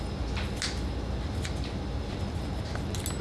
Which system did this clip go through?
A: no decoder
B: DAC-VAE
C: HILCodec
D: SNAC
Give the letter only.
A